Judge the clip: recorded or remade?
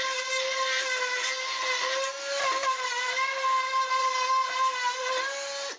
recorded